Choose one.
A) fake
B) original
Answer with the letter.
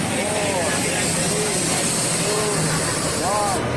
B